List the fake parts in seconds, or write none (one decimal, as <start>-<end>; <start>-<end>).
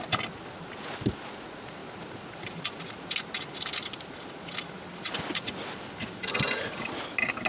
none